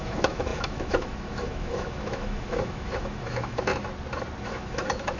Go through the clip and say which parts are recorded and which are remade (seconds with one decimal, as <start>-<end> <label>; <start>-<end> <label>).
0.0-3.7 remade; 3.7-4.4 recorded; 4.4-5.2 remade